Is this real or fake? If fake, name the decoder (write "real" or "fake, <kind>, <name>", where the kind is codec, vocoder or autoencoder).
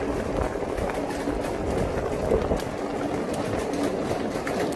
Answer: real